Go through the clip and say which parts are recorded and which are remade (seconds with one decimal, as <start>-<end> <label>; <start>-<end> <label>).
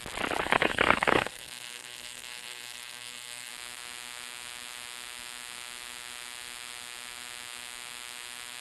0.0-0.4 recorded; 0.4-3.5 remade; 3.5-8.6 recorded